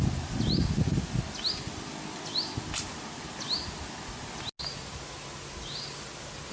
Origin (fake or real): real